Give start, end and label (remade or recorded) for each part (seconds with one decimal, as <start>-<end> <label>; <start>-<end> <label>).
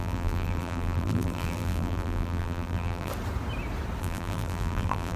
0.0-3.1 remade; 3.1-4.0 recorded; 4.0-5.2 remade